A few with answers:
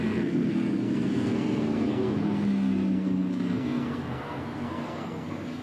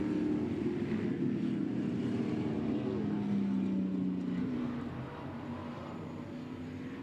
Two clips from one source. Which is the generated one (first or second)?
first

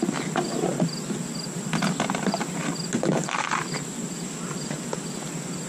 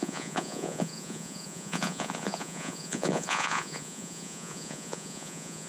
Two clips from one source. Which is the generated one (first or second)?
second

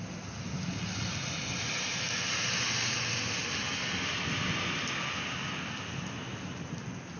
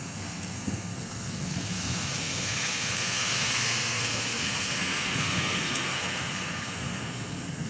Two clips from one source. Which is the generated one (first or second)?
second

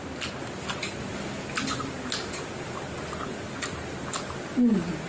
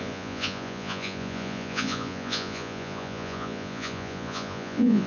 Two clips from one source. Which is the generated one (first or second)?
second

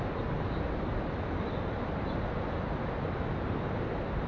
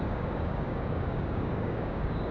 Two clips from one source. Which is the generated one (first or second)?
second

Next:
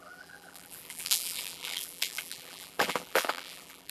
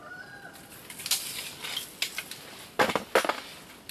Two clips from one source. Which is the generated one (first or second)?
first